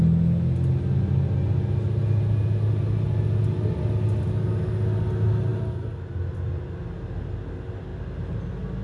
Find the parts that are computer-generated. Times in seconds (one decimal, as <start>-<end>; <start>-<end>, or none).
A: 5.5-7.3